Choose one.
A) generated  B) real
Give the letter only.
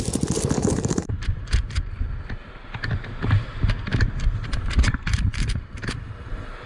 A